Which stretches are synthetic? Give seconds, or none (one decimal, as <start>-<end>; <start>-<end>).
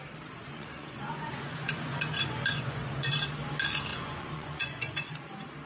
0.4-3.1; 3.9-5.1